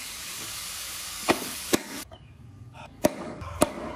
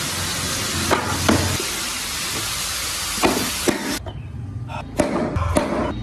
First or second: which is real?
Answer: second